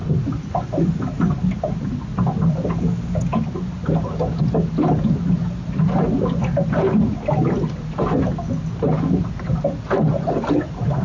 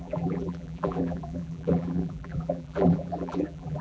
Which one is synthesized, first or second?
second